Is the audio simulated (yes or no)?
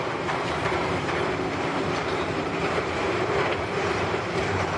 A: yes